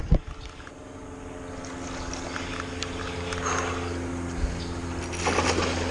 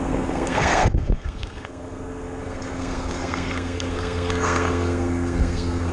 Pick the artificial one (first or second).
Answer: second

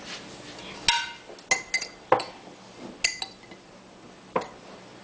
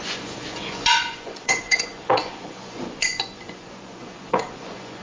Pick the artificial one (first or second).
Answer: second